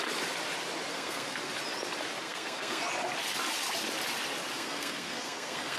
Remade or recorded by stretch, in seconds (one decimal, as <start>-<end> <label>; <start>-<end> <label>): 0.0-0.9 recorded; 0.9-1.5 remade; 1.5-2.2 recorded; 2.2-2.8 remade; 2.8-4.5 recorded; 4.5-5.8 remade